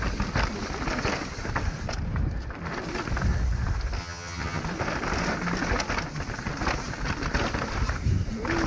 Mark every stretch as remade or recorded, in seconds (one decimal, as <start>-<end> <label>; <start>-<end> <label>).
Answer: 0.0-4.0 recorded; 4.0-4.6 remade; 4.6-8.7 recorded